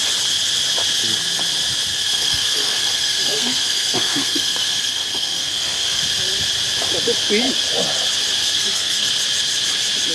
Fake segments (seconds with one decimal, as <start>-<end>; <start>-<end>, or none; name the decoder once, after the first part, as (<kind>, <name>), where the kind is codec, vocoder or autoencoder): 1.9-6.0 (codec, SNAC); 8.4-9.1